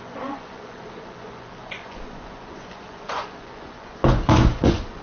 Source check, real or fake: fake